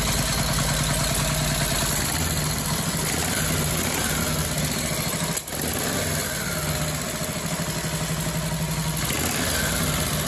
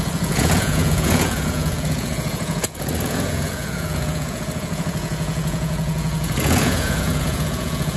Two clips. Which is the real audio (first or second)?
first